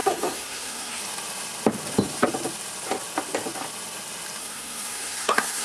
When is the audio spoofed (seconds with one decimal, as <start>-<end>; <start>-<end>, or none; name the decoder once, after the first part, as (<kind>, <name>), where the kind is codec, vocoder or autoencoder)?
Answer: 0.0-1.0 (codec, SNAC); 4.4-5.6